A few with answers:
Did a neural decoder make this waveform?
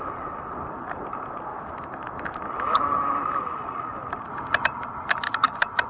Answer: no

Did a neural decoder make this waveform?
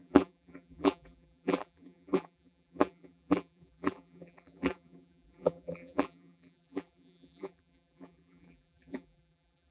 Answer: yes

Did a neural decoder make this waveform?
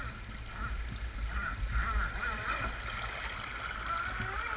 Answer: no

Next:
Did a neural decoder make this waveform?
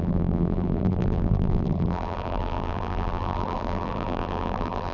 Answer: yes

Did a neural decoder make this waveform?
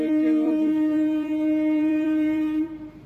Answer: yes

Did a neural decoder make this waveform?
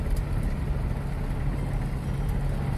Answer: no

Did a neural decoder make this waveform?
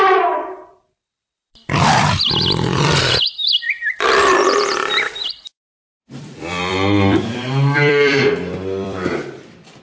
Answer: yes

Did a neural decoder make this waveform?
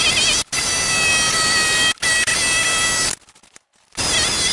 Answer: no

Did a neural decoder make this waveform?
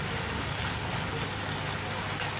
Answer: no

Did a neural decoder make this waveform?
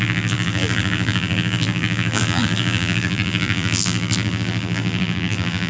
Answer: yes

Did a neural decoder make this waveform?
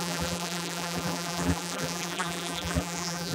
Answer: yes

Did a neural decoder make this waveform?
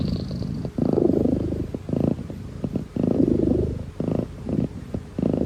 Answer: yes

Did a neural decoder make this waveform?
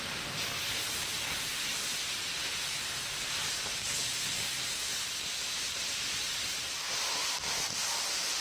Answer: no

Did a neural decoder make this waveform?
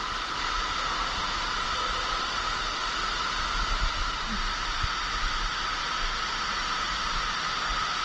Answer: no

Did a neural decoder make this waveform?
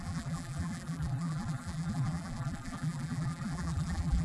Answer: yes